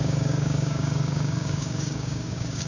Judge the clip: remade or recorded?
remade